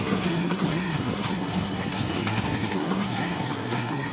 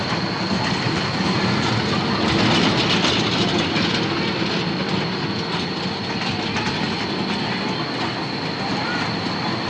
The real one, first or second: second